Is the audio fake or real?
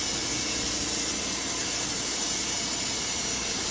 real